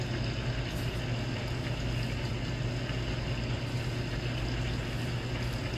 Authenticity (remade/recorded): recorded